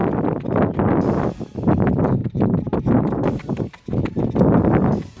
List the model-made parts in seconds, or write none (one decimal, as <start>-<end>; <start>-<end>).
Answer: 2.2-4.2